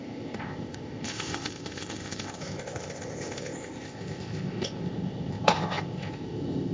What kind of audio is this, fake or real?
fake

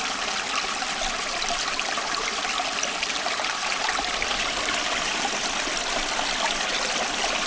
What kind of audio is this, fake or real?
real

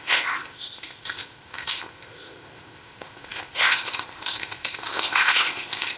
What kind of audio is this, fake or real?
fake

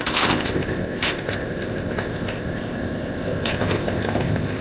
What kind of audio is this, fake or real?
fake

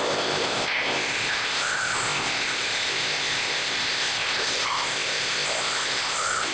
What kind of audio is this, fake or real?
fake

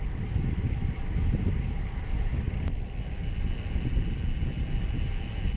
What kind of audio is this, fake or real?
real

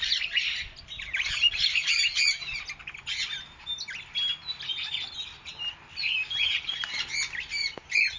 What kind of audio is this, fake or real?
real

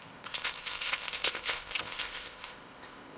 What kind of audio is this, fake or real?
fake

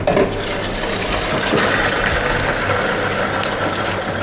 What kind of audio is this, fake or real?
real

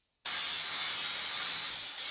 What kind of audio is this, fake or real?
real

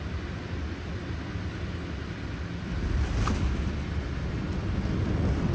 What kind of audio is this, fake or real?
real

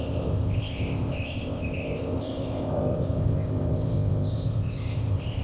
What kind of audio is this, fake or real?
fake